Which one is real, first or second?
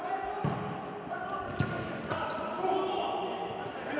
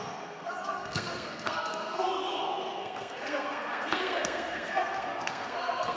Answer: first